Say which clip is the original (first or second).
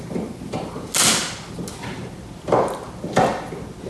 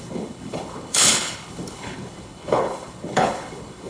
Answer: first